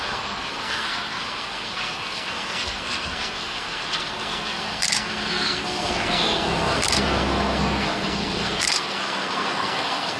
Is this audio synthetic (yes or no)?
yes